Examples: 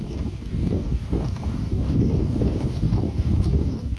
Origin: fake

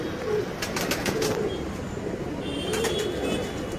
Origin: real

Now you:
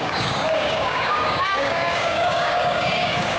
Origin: fake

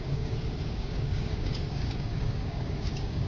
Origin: fake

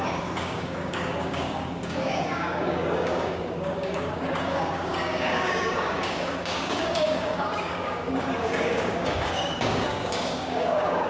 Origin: fake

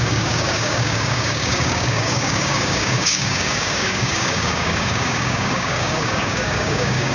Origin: fake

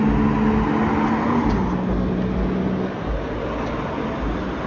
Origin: real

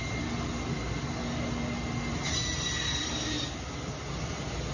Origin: real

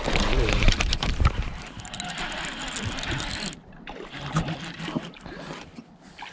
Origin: real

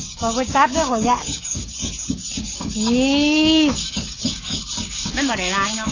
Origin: fake